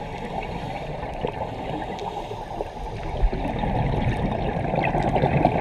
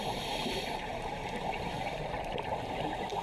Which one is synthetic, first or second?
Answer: second